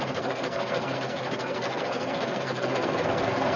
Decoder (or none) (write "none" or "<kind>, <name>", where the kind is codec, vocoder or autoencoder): codec, SNAC